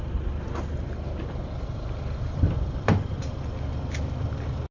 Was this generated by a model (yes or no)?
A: no